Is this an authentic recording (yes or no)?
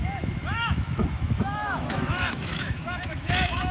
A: no